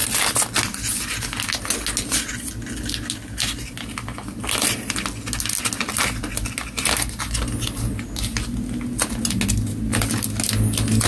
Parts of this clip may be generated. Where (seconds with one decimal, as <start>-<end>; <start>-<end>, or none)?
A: none